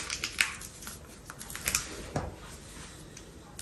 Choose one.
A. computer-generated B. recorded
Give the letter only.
B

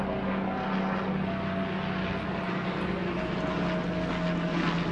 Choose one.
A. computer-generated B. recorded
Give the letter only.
B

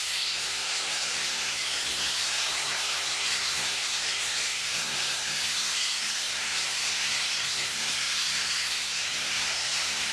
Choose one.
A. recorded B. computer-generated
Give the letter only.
B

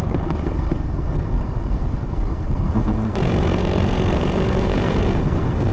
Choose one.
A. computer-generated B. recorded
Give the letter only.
A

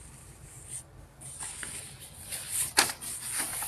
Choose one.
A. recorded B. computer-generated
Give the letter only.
B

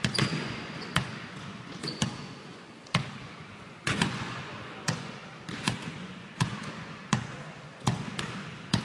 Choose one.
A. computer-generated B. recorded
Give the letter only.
A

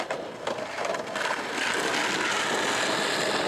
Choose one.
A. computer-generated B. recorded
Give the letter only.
B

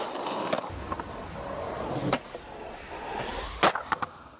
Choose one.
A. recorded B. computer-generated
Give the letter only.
A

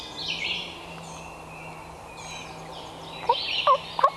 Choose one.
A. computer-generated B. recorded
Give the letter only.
B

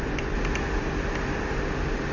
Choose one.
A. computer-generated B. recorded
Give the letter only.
B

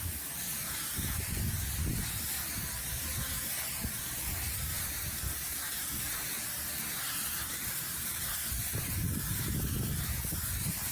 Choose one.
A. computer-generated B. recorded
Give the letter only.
B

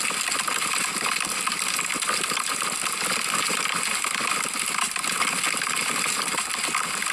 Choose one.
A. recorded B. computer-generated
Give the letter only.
A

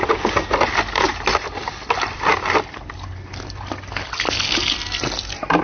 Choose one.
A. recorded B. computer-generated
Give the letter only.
A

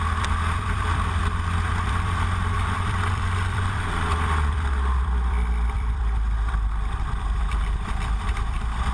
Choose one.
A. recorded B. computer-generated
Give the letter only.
B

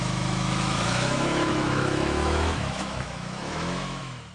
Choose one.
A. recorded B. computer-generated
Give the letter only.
B